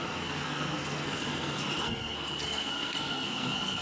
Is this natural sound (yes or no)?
no